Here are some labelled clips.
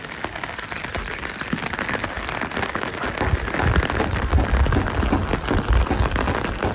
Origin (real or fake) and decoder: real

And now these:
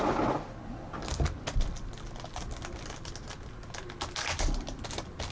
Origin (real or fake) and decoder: real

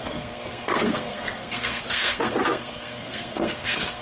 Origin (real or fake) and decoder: fake, codec, SNAC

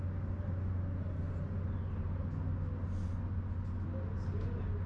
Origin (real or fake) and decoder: real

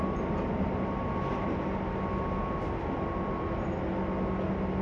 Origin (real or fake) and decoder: real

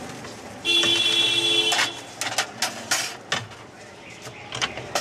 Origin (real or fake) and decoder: real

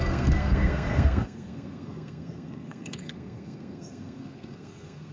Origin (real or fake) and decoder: fake, codec, SNAC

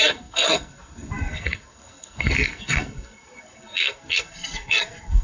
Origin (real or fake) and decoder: fake, codec, SNAC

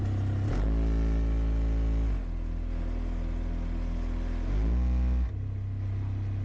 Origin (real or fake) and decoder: real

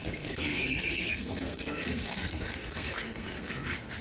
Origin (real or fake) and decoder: fake, codec, SNAC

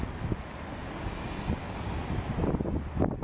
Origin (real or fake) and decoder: real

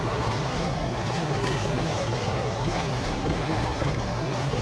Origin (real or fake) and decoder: fake, codec, SNAC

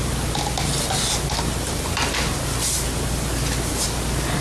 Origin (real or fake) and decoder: real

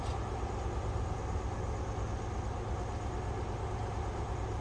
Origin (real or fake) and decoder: real